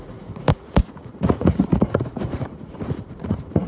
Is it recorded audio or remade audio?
remade